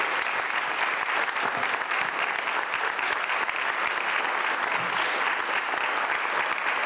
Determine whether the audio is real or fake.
real